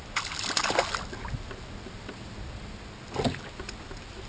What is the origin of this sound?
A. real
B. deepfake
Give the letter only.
A